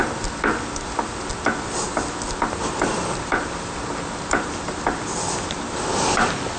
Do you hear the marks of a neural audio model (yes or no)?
no